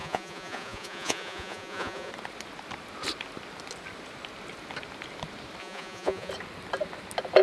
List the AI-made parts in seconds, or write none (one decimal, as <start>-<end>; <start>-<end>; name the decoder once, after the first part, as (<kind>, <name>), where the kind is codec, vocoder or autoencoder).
0.0-2.1 (vocoder, Vocos); 5.6-6.3